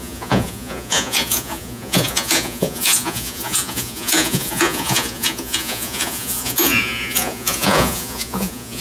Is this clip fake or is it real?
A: fake